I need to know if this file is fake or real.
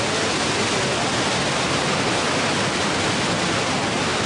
real